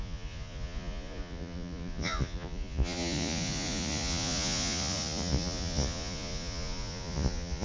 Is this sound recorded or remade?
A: remade